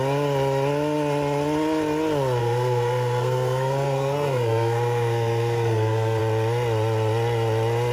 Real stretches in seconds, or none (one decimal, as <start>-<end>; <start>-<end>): 0.0-2.4; 6.2-7.9